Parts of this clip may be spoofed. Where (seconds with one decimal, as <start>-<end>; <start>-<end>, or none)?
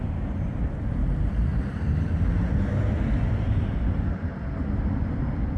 none